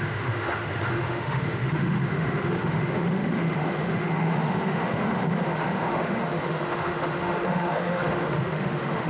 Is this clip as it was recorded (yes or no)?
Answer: no